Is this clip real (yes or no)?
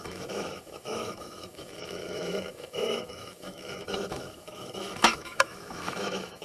no